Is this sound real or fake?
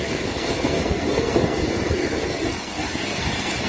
fake